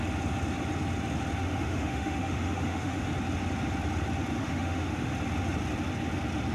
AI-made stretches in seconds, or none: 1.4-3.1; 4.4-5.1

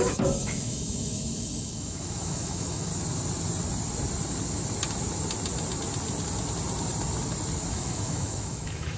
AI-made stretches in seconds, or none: 0.0-2.9; 7.7-9.0